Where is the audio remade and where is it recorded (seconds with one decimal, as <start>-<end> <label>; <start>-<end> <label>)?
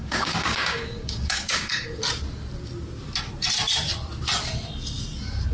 0.0-2.0 remade; 2.0-5.5 recorded